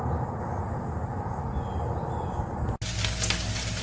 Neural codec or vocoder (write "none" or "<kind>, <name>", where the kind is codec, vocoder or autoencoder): none